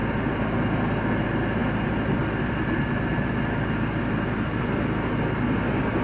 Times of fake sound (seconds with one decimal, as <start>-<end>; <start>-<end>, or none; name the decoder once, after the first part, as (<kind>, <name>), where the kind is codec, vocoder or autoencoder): none